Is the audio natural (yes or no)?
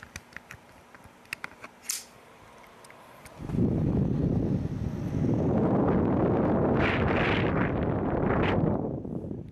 yes